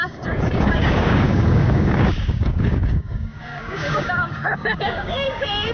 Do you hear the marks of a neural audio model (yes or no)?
yes